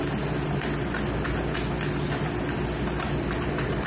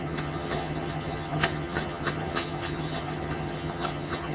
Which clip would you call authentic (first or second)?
first